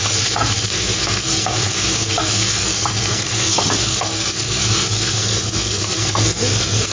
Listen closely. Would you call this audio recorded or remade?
remade